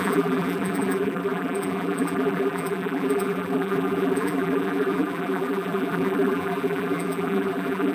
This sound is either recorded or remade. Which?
remade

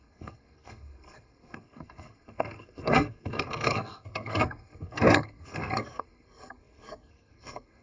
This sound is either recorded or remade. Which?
remade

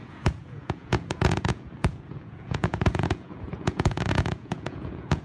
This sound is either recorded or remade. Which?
remade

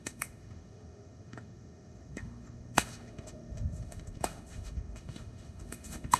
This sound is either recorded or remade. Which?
remade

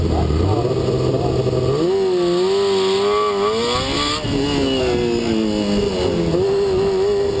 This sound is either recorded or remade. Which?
recorded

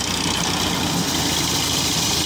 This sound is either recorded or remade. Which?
recorded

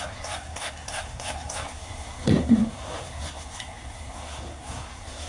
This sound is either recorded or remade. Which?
remade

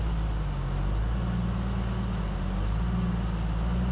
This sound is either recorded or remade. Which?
recorded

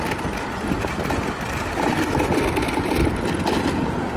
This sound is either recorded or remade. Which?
recorded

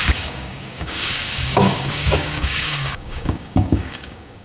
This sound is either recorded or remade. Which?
remade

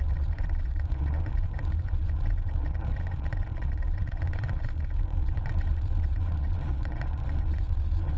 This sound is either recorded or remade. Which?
remade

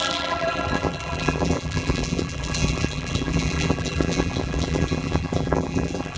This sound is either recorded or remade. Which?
remade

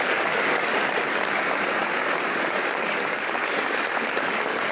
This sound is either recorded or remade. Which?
remade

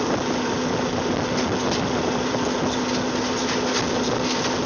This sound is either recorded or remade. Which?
recorded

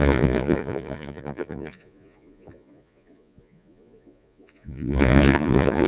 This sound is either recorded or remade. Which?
remade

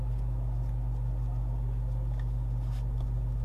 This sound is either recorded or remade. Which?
recorded